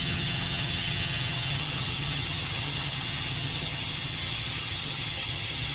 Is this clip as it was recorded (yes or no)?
no